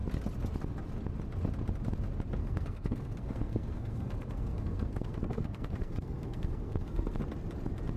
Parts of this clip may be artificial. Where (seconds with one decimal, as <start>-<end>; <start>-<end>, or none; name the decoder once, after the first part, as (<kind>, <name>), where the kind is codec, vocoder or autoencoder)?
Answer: 2.4-7.2 (codec, SNAC)